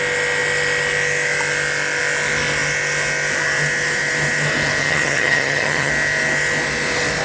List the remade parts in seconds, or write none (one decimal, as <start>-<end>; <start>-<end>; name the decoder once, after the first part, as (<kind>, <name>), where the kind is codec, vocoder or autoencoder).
4.8-5.9 (vocoder, HiFi-GAN)